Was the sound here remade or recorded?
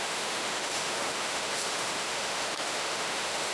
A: remade